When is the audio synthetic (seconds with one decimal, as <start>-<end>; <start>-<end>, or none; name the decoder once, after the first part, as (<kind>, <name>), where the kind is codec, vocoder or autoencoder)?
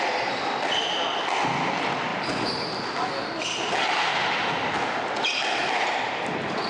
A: none